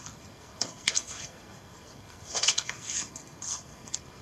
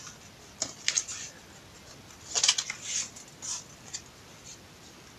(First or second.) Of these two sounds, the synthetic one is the first